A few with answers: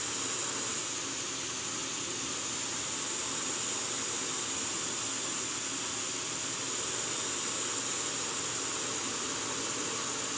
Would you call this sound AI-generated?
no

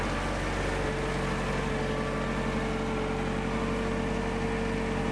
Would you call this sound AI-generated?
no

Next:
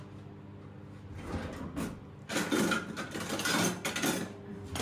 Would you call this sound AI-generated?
no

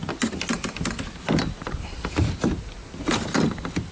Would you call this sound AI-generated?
no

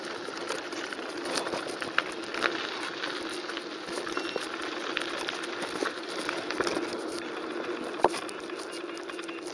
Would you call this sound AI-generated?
no